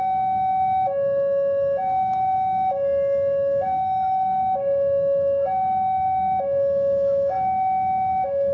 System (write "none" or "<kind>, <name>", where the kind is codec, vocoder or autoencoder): codec, DAC